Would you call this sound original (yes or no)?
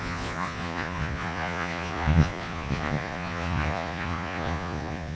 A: no